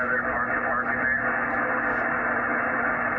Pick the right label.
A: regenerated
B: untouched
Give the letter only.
B